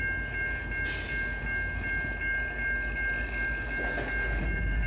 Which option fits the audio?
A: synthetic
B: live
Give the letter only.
B